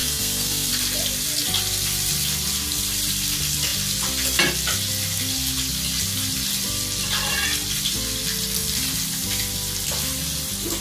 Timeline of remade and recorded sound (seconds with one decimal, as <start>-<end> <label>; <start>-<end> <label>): 0.0-0.7 remade; 0.7-10.8 recorded